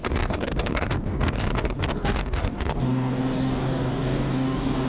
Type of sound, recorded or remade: remade